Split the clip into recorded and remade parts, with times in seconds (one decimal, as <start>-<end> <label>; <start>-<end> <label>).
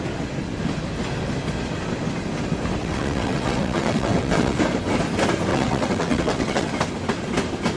0.0-2.8 recorded; 2.8-4.6 remade; 4.6-5.5 recorded; 5.5-6.7 remade; 6.7-7.8 recorded